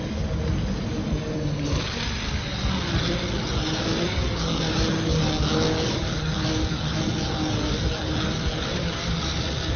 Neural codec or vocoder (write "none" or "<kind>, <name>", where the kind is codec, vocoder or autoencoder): none